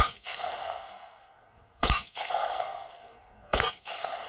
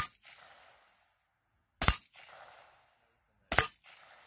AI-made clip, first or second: first